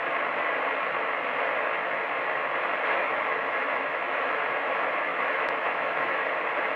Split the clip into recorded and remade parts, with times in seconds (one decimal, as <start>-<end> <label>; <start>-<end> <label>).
0.0-3.0 recorded; 3.0-4.4 remade; 4.4-5.1 recorded; 5.1-6.2 remade; 6.2-6.8 recorded